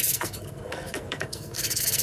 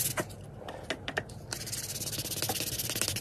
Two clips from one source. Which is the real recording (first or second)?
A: second